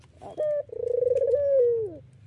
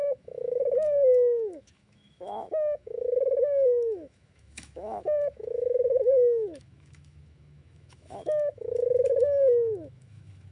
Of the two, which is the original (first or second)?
first